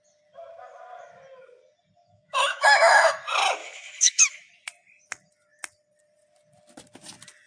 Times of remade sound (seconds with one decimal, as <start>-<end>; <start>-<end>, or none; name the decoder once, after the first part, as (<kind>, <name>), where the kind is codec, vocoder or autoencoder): 2.0-3.1 (autoencoder, DAC-VAE); 3.6-4.5